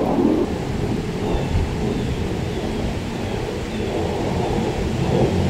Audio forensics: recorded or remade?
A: recorded